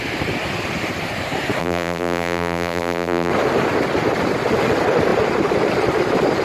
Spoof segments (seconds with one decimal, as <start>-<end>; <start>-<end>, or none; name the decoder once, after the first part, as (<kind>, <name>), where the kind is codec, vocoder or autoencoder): 1.6-3.3 (vocoder, BigVGAN v2)

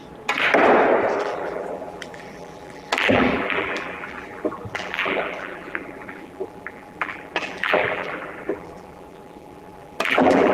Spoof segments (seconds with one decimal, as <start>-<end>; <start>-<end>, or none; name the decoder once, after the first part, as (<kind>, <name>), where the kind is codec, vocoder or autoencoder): 1.2-10.5 (vocoder, BigVGAN v2)